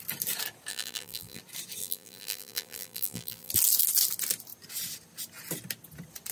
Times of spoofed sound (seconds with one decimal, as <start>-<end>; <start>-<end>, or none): 0.7-1.4; 1.8-3.5